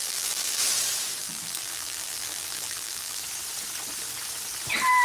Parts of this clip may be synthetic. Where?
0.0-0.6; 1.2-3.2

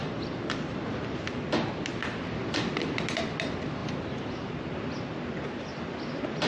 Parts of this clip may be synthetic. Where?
0.0-1.0